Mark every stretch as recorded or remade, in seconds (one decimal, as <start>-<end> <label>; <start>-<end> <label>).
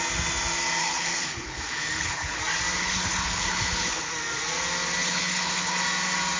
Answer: 0.0-0.8 recorded; 0.8-2.4 remade; 2.4-2.8 recorded; 2.8-4.1 remade; 4.1-5.0 recorded; 5.0-5.8 remade; 5.8-6.4 recorded